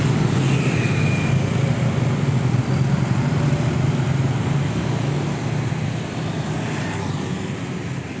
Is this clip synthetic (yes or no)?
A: no